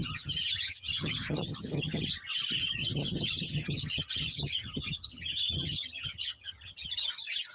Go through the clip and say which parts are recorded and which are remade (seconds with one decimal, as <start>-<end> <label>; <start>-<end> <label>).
0.0-2.0 remade; 2.0-2.6 recorded; 2.6-7.1 remade; 7.1-7.5 recorded